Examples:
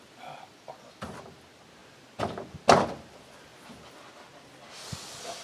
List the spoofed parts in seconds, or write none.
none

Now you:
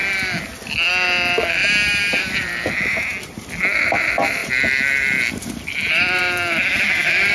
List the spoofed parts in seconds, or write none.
1.6-2.8; 4.4-6.2

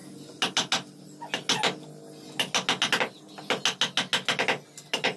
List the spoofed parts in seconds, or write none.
none